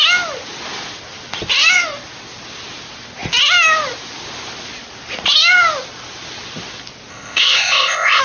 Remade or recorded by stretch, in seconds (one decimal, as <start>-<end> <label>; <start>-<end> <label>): 0.0-7.1 recorded; 7.1-8.2 remade